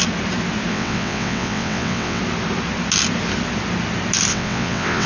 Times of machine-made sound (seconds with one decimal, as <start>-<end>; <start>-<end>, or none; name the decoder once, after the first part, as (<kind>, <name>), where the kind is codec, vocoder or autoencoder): 0.7-2.2 (vocoder, WaveNeXt); 4.3-5.1